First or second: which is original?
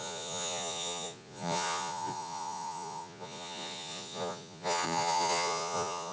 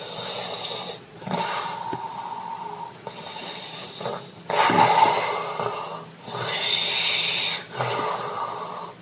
second